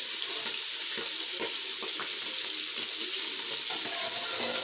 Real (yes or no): yes